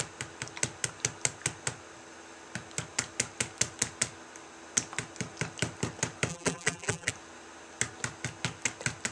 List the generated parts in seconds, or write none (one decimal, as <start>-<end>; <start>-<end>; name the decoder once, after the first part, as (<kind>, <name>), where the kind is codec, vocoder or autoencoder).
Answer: 6.3-7.1 (vocoder, BigVGAN v2)